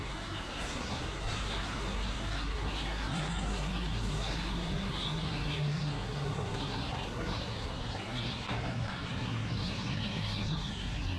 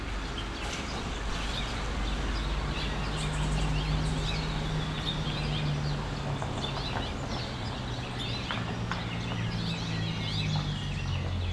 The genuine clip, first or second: second